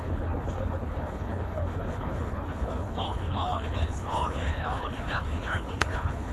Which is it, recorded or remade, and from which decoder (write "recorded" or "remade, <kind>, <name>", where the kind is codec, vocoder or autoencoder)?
remade, codec, HILCodec